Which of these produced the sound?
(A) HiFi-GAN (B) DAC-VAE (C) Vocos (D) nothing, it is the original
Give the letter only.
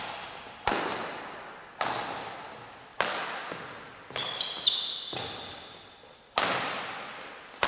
D